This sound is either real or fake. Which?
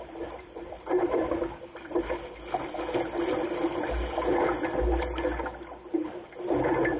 real